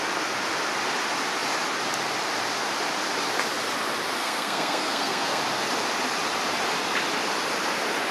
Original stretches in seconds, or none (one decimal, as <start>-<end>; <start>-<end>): 0.0-4.2; 5.4-8.1